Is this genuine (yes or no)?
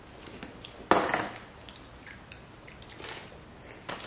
yes